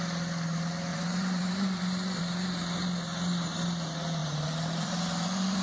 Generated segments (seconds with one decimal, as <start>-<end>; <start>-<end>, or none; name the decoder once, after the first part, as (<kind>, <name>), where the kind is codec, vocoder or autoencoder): 0.9-2.2 (vocoder, BigVGAN v2); 4.2-5.6